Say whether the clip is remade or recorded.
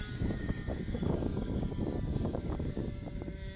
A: remade